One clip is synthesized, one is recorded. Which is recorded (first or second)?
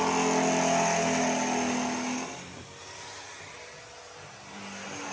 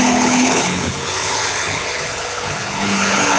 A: first